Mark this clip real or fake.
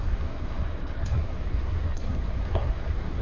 fake